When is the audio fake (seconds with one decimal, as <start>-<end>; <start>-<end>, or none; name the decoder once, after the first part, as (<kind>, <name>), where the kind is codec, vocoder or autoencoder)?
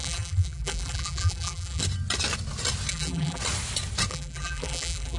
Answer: 0.0-1.8 (vocoder, BigVGAN v2); 2.9-3.4; 4.1-5.2